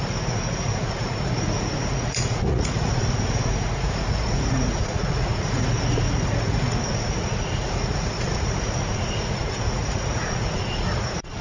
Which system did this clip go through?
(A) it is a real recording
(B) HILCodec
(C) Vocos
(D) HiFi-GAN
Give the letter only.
C